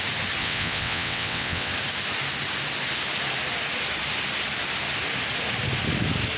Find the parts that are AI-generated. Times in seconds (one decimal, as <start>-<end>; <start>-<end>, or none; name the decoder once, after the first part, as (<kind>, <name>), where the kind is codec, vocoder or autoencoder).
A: 0.4-1.7 (vocoder, WaveNeXt)